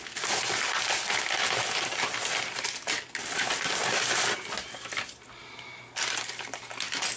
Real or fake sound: real